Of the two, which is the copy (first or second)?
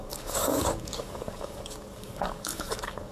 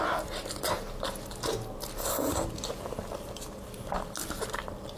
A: first